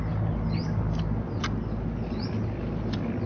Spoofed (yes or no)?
no